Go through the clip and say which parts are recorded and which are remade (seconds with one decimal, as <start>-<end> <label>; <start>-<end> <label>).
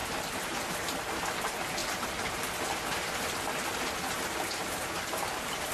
0.0-1.0 remade; 1.0-4.6 recorded; 4.6-5.7 remade